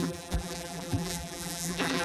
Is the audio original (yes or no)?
no